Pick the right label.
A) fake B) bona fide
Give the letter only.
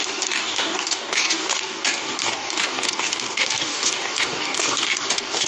A